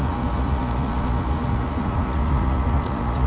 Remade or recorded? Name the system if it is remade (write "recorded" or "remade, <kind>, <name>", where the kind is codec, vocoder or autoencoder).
remade, vocoder, Vocos